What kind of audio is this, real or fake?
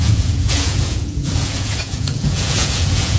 fake